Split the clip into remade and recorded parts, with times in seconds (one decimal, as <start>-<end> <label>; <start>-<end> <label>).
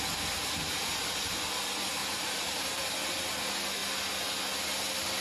0.0-2.0 recorded; 2.0-2.8 remade; 2.8-5.2 recorded